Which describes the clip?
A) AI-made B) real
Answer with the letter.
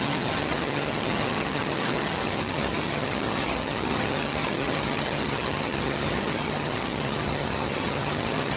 A